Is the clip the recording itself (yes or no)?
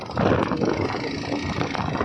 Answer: yes